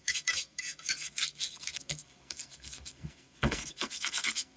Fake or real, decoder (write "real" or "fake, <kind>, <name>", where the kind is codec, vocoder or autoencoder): fake, codec, SNAC